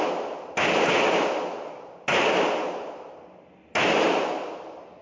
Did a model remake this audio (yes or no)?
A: no